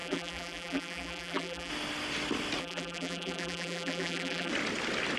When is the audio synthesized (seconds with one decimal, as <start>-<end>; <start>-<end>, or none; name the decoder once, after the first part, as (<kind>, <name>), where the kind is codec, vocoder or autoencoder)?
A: 0.0-1.7 (vocoder, BigVGAN v2); 2.6-4.5